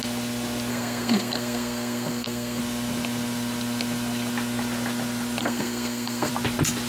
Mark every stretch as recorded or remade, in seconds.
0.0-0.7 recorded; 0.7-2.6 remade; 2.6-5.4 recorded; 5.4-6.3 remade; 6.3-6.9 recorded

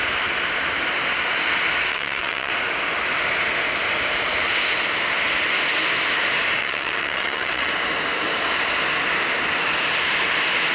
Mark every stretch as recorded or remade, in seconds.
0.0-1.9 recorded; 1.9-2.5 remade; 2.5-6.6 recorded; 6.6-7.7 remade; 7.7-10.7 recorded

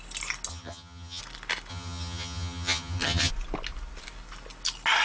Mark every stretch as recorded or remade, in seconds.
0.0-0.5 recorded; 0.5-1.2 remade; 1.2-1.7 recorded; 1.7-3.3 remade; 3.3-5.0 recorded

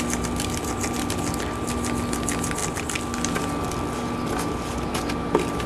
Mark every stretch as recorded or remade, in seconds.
0.0-5.7 recorded

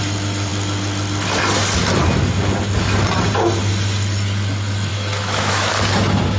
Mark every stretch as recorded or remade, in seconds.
0.0-4.9 recorded; 4.9-5.7 remade; 5.7-6.4 recorded